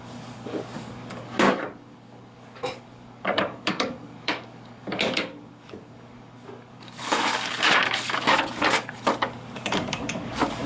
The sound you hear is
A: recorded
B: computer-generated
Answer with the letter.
B